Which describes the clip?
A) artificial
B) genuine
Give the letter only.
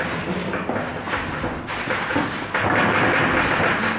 B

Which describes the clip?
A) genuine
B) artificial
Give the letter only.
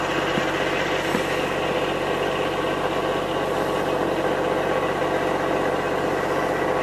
A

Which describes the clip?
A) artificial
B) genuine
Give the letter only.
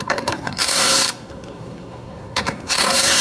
A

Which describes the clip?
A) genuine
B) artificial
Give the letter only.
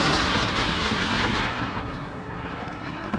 B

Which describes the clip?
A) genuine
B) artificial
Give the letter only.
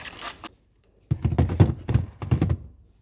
A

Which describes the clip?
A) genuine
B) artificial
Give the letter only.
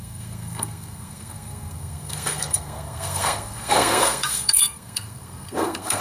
B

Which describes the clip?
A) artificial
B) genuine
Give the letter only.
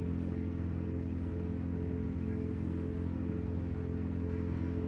A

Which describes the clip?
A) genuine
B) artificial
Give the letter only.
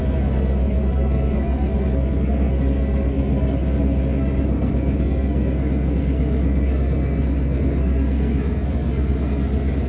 B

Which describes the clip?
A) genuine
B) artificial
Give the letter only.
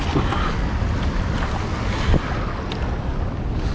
A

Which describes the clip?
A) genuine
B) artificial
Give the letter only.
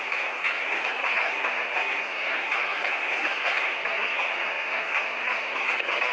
B